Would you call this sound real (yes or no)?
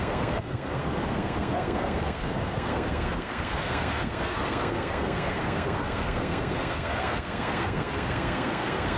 no